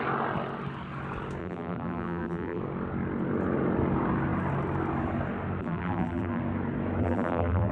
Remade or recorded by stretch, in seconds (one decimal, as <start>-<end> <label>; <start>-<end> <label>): 0.0-1.4 recorded; 1.4-2.6 remade; 2.6-5.6 recorded; 5.6-6.4 remade; 6.4-7.0 recorded; 7.0-7.7 remade

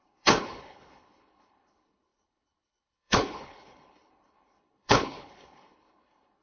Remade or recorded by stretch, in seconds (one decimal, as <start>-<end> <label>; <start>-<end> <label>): 0.0-6.4 remade

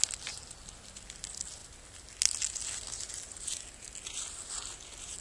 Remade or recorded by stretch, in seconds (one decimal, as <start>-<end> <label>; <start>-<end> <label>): 0.0-5.2 recorded

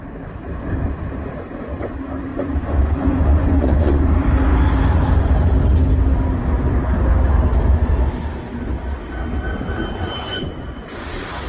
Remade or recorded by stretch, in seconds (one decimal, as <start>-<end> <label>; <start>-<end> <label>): 0.0-2.3 recorded; 2.3-4.1 remade; 4.1-10.3 recorded; 10.3-10.8 remade; 10.8-11.5 recorded

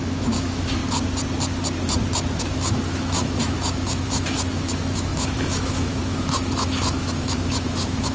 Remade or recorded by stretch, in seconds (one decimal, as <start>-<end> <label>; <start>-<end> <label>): 0.0-0.8 remade; 0.8-2.4 recorded; 2.4-8.1 remade